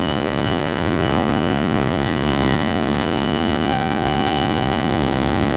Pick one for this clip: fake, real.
fake